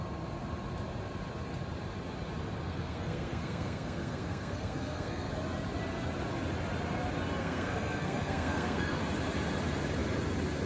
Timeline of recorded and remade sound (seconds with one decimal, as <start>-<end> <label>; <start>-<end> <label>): 0.0-2.7 recorded; 2.7-5.3 remade; 5.3-7.4 recorded; 7.4-9.0 remade; 9.0-10.7 recorded